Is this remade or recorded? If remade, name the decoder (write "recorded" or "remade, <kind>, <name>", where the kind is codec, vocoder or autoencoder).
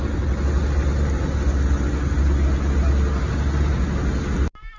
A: recorded